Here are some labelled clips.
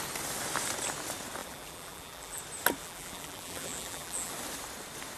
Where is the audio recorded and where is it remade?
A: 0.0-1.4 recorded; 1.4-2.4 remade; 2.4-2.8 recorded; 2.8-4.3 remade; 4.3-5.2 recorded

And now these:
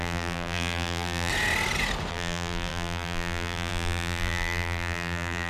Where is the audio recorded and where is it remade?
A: 0.0-1.3 remade; 1.3-2.1 recorded; 2.1-5.5 remade

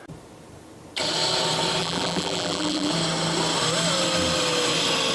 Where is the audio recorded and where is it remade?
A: 0.0-1.8 recorded; 1.8-2.9 remade; 2.9-5.1 recorded

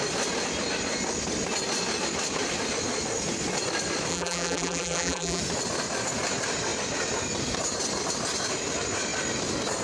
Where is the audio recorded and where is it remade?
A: 0.0-4.1 recorded; 4.1-5.4 remade; 5.4-9.8 recorded

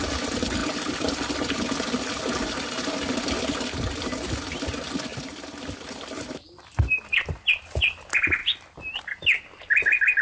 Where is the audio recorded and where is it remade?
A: 0.0-0.6 recorded; 0.6-1.3 remade; 1.3-5.1 recorded; 5.1-7.3 remade; 7.3-8.4 recorded; 8.4-9.0 remade; 9.0-10.2 recorded

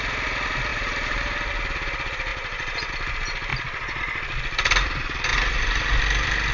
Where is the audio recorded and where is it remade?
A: 0.0-0.7 recorded; 0.7-1.5 remade; 1.5-2.3 recorded; 2.3-2.9 remade; 2.9-5.3 recorded; 5.3-5.9 remade; 5.9-6.5 recorded